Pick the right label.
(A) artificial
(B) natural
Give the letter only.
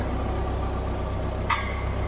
B